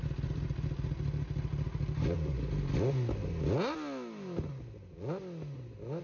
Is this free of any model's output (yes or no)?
yes